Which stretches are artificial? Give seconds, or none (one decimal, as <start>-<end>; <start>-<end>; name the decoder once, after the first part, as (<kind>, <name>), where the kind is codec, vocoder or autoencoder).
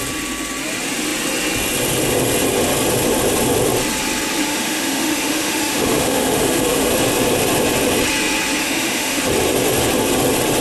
4.5-6.9 (autoencoder, DAC-VAE); 8.6-9.2